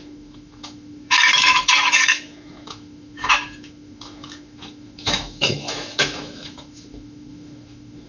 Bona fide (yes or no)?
no